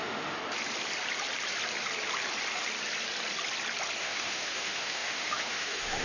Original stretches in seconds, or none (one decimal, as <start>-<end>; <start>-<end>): 0.4-4.0